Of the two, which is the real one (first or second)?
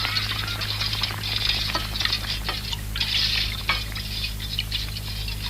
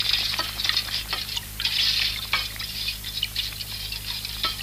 first